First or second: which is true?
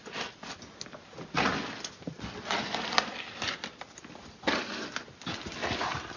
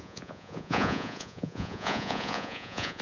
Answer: first